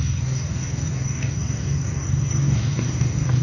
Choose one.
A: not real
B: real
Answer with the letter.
A